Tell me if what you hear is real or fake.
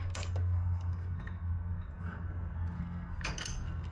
fake